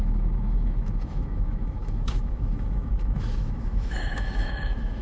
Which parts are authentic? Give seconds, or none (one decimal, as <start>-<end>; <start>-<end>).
none